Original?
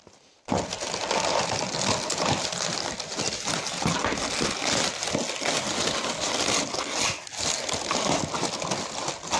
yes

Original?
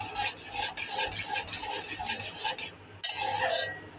yes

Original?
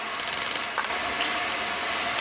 yes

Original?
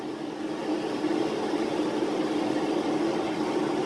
no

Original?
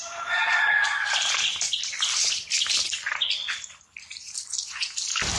yes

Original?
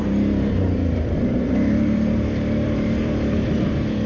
no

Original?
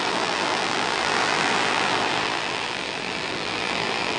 no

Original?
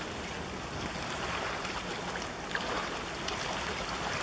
yes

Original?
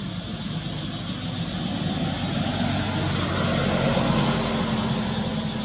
yes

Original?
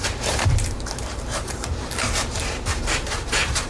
no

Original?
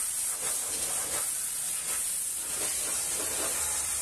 yes